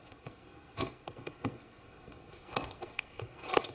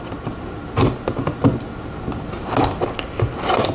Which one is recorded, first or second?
second